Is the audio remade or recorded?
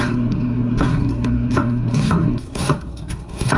remade